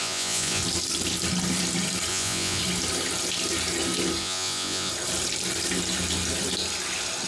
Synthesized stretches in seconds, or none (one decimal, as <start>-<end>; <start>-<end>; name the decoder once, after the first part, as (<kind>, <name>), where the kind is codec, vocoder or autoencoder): 0.0-0.6 (vocoder, Vocos); 2.1-2.6; 4.2-4.9